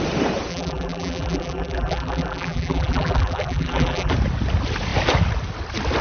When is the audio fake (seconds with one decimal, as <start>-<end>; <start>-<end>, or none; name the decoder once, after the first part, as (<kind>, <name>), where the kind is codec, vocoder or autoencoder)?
0.5-4.1 (vocoder, BigVGAN v2)